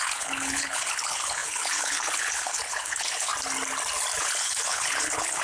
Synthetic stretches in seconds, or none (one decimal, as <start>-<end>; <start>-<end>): 0.0-3.3; 4.2-5.4